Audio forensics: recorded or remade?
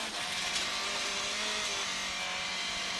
recorded